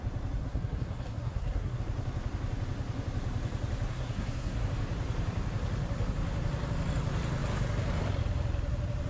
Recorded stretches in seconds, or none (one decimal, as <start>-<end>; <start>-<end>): 0.0-0.4; 1.8-3.9; 4.7-9.1